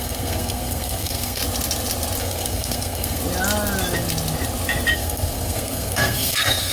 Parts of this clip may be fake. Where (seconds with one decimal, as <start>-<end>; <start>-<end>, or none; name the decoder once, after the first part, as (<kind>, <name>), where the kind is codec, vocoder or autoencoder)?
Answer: 0.0-1.4 (codec, SNAC); 2.2-3.2; 4.9-6.7